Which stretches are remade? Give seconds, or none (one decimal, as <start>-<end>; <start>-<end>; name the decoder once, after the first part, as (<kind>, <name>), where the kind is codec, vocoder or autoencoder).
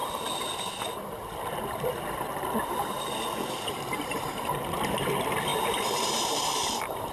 3.5-7.1 (vocoder, BigVGAN v2)